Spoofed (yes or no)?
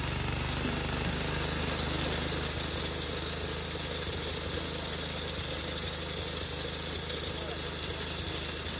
no